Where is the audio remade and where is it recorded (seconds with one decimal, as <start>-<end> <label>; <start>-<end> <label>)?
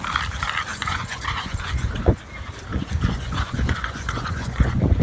0.0-0.7 recorded; 0.7-2.2 remade; 2.2-2.7 recorded; 2.7-5.0 remade